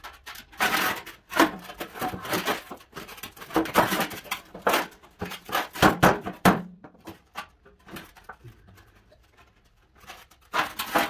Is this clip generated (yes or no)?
yes